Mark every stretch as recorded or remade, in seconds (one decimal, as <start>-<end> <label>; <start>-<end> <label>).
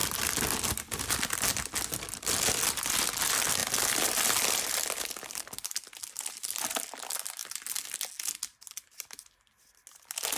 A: 0.0-10.4 recorded